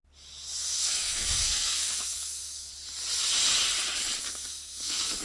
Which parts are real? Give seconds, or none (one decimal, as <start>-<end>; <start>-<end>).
0.0-0.6; 2.7-4.2